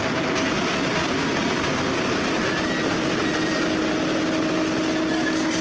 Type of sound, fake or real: real